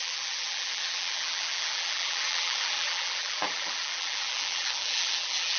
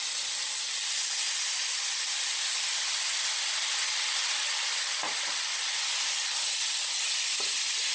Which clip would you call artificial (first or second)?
first